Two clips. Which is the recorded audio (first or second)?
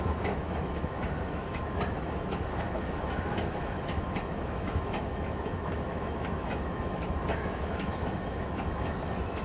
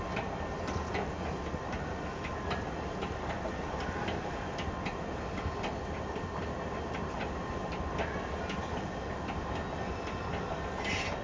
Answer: second